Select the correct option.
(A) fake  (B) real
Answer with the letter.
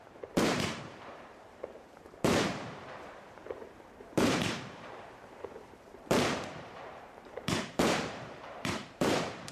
A